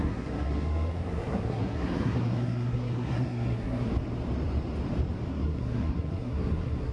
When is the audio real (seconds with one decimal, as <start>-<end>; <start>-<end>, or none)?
3.9-5.3